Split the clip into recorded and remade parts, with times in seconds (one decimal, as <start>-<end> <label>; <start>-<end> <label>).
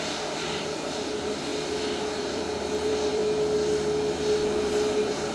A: 0.0-1.5 remade; 1.5-2.2 recorded; 2.2-3.2 remade; 3.2-4.5 recorded; 4.5-5.3 remade